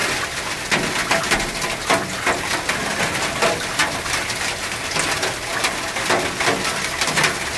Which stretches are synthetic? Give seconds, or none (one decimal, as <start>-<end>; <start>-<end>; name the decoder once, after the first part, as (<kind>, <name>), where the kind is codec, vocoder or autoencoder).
none